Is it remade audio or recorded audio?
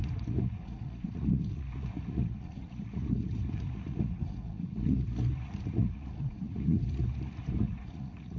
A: remade